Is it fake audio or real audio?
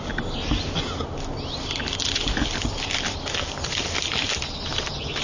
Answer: real